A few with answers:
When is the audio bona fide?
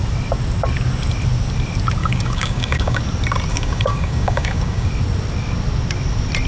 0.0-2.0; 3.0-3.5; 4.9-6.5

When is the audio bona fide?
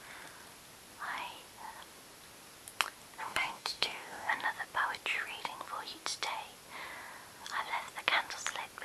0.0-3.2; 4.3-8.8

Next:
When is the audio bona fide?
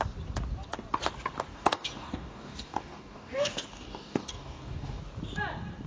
0.0-1.5; 5.0-5.9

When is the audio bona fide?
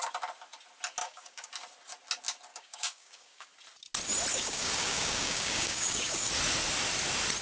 0.0-1.0; 1.5-2.5; 3.5-4.3; 6.3-7.4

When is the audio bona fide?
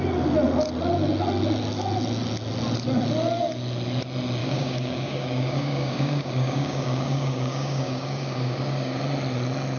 0.0-4.4; 9.0-9.8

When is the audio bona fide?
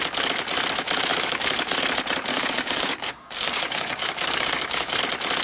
0.0-1.1; 1.8-2.3; 5.0-5.4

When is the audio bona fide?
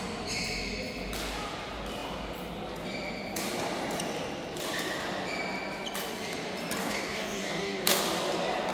0.0-6.8; 8.0-8.7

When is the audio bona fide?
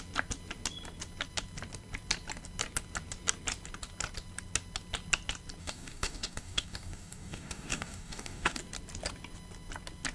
0.0-5.6; 8.6-10.1